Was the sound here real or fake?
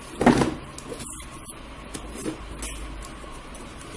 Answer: real